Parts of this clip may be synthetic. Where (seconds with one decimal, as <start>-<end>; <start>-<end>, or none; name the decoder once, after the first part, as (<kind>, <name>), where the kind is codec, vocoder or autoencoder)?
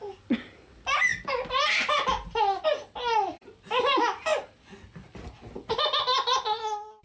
1.1-2.4 (vocoder, BigVGAN v2)